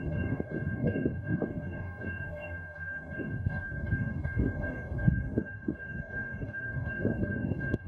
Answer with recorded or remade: remade